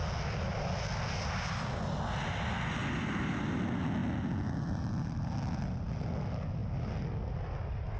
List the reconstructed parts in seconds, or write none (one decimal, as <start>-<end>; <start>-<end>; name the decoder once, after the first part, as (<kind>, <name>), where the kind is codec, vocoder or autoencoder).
none